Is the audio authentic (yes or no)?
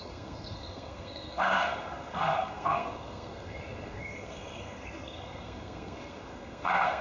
no